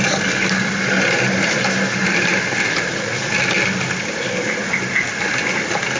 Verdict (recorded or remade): recorded